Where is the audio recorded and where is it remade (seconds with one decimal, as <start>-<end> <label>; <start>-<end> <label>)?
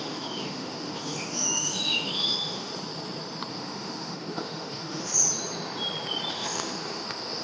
0.0-2.7 remade; 2.7-3.5 recorded; 3.5-5.1 remade; 5.1-6.3 recorded; 6.3-7.4 remade